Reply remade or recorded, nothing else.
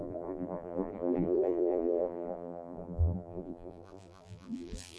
remade